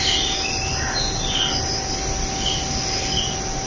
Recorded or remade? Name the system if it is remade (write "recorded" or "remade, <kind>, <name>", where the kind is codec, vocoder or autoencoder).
recorded